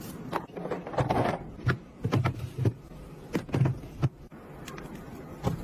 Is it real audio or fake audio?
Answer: fake